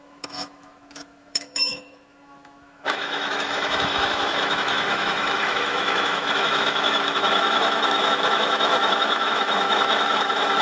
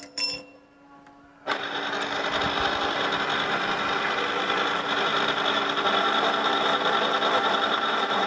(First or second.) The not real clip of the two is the first